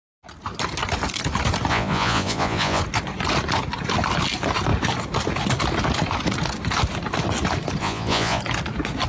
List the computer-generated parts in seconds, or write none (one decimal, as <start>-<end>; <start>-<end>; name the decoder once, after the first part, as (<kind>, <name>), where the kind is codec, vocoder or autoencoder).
1.7-2.8 (vocoder, Vocos); 7.8-8.4